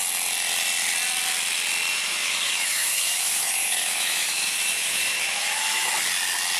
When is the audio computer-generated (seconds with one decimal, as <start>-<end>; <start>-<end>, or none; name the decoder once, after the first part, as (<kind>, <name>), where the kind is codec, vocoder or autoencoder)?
1.9-5.9 (autoencoder, DAC-VAE)